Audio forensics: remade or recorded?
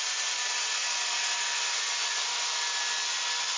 recorded